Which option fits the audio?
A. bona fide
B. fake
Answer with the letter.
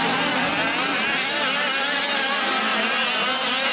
A